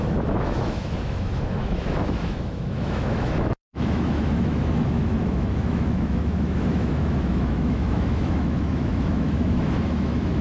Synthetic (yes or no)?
yes